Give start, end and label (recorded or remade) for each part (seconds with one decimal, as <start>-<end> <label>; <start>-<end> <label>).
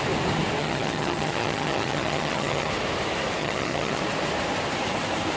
0.0-0.6 recorded; 0.6-2.7 remade; 2.7-3.4 recorded; 3.4-4.0 remade; 4.0-5.4 recorded